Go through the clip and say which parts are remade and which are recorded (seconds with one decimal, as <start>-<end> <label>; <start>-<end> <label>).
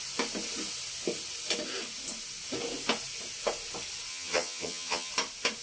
0.0-4.1 recorded; 4.1-5.1 remade; 5.1-5.6 recorded